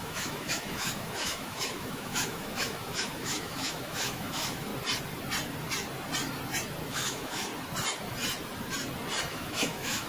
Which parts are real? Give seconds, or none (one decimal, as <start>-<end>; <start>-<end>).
4.7-6.9; 7.5-9.3

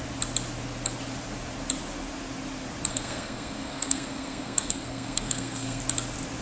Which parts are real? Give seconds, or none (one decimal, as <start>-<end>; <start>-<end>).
0.0-2.9; 5.8-6.4